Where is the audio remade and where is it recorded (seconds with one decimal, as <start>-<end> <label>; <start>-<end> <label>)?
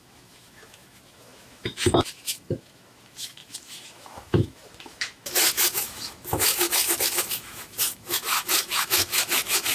0.0-9.7 remade